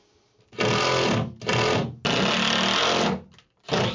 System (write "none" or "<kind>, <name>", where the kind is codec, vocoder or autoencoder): none